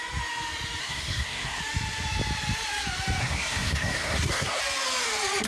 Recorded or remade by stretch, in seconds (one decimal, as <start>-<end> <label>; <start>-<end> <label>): 0.0-0.8 recorded; 0.8-1.6 remade; 1.6-3.2 recorded; 3.2-4.6 remade; 4.6-5.5 recorded